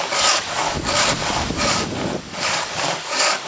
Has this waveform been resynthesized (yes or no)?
yes